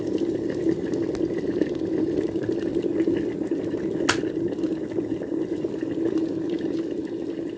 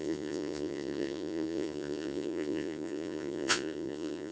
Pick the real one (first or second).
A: first